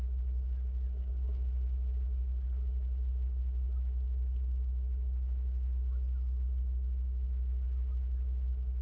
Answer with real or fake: real